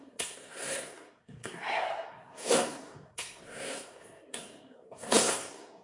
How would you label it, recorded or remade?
remade